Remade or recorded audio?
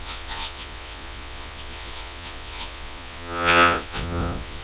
remade